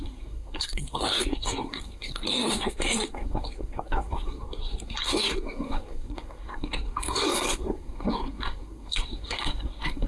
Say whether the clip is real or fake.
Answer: fake